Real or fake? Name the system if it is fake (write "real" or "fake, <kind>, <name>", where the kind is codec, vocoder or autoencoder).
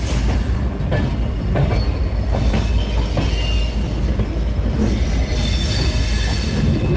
real